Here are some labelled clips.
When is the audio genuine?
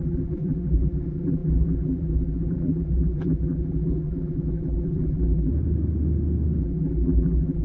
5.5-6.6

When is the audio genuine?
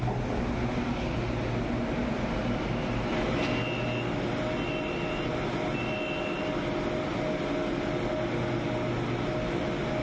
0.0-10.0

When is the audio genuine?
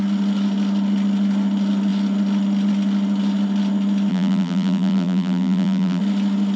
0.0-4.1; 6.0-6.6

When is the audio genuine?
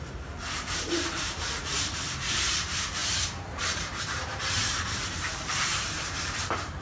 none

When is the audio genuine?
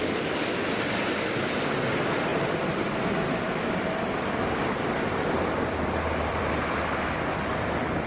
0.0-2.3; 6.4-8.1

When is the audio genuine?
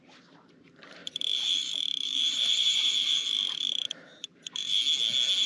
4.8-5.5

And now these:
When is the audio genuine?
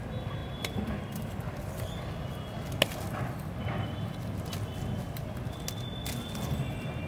0.0-0.4; 1.7-7.1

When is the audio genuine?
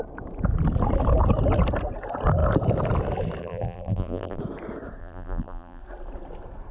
0.0-3.4; 4.4-5.0; 5.8-6.7